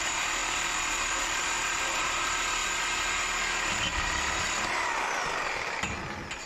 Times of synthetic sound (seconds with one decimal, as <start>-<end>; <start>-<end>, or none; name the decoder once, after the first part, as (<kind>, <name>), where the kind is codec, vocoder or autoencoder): 0.0-2.6 (vocoder, BigVGAN v2)